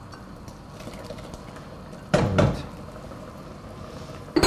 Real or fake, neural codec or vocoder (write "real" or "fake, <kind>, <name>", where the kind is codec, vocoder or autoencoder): real